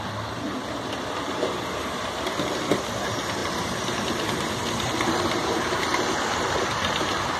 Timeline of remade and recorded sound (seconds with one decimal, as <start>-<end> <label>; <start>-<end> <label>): 0.0-5.4 recorded; 5.4-6.2 remade; 6.2-7.4 recorded